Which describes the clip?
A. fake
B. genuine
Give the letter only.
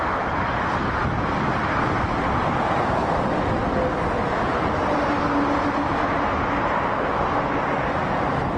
B